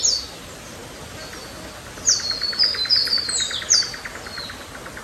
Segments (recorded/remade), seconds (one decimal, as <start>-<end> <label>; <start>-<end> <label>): 0.0-5.0 recorded

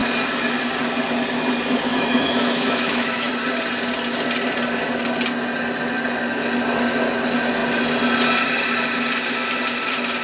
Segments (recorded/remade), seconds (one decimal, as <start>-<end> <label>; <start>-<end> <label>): 0.0-1.9 recorded; 1.9-3.3 remade; 3.3-10.2 recorded